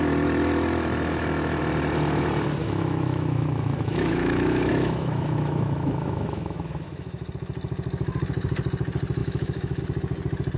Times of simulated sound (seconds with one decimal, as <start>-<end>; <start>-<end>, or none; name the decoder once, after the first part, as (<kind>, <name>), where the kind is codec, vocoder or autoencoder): 2.6-7.3 (autoencoder, DAC-VAE); 9.2-9.8